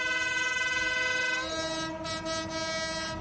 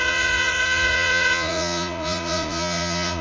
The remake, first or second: second